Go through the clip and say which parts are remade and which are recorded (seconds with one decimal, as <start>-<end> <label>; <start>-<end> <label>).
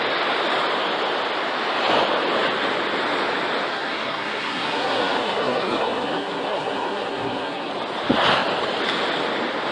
0.0-3.7 recorded; 3.7-7.7 remade; 7.7-9.7 recorded